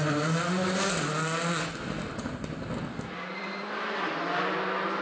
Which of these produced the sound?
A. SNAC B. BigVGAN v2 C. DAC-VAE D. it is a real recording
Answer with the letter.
D